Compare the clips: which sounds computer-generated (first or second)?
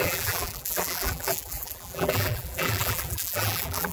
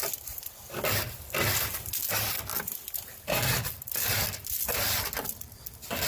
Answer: first